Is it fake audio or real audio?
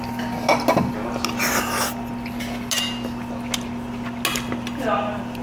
real